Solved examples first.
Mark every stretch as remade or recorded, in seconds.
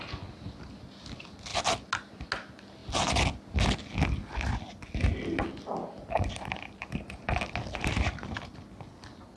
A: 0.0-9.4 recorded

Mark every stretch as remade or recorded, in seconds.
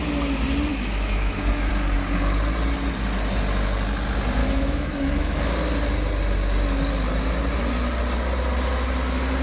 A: 0.0-0.7 recorded; 0.7-1.7 remade; 1.7-4.4 recorded; 4.4-5.5 remade; 5.5-9.4 recorded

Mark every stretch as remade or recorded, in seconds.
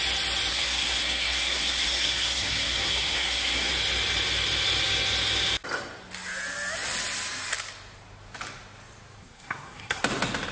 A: 0.0-0.5 recorded; 0.5-3.7 remade; 3.7-9.2 recorded; 9.2-10.0 remade; 10.0-10.5 recorded